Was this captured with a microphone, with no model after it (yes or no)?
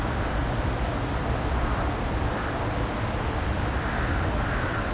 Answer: yes